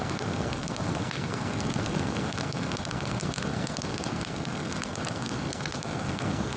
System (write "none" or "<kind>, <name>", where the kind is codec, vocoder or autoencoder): codec, SNAC